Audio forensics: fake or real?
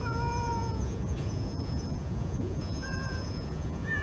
fake